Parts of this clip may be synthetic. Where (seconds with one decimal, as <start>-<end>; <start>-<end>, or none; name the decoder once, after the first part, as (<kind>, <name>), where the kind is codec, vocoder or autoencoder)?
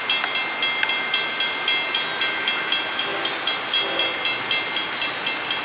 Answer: none